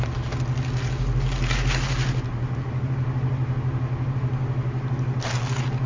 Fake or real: real